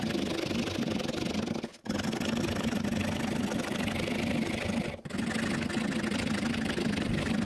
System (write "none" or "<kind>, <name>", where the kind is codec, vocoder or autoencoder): none